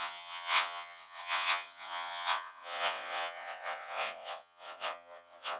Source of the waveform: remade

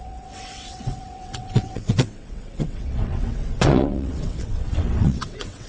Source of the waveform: remade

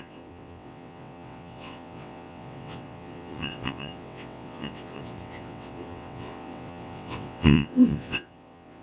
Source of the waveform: remade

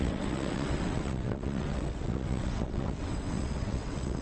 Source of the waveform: remade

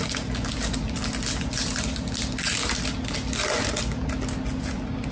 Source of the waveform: recorded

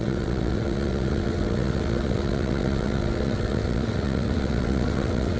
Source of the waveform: remade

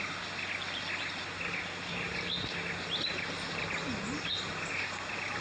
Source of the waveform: recorded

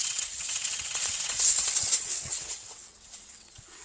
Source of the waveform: remade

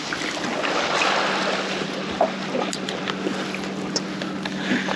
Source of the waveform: recorded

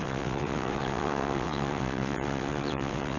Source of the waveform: remade